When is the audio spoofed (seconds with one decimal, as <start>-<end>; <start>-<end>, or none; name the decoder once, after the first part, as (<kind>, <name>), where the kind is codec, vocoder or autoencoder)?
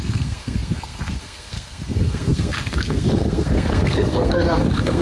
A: 0.0-5.0 (codec, SNAC)